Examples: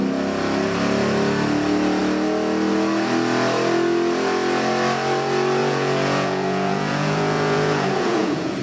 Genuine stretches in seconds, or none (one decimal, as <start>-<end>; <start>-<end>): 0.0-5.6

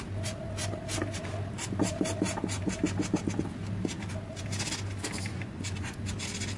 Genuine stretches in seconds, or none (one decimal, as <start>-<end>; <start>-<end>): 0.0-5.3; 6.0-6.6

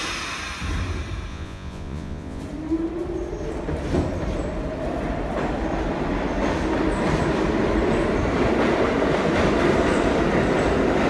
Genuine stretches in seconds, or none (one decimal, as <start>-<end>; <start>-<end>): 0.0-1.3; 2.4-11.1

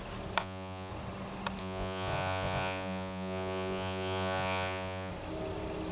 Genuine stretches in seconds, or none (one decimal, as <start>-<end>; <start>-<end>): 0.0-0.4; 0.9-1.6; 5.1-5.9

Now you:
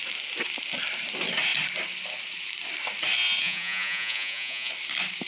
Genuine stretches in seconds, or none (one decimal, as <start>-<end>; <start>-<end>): 0.0-3.4; 4.7-5.3